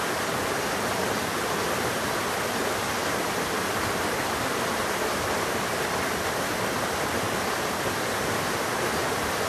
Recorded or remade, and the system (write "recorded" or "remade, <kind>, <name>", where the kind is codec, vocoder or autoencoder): recorded